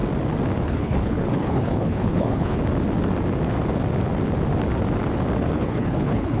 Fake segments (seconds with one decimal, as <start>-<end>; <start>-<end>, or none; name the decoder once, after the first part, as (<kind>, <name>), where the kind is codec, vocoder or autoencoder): 0.6-2.6 (codec, HILCodec); 5.5-6.4